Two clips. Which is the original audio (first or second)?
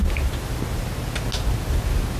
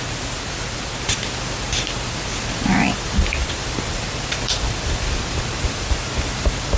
first